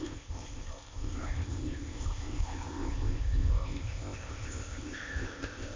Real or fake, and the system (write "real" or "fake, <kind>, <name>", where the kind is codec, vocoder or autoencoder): fake, codec, ZipCodec